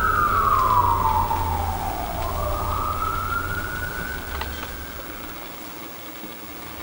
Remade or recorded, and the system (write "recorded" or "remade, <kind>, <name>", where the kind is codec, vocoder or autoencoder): recorded